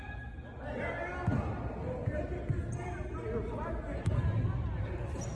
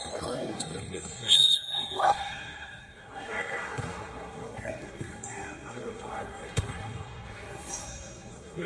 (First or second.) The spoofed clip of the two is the second